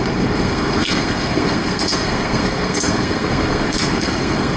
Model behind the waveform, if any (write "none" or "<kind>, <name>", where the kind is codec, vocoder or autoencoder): codec, SNAC